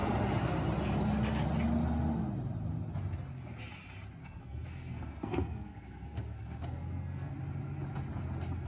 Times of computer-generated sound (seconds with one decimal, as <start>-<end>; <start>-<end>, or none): 4.2-7.3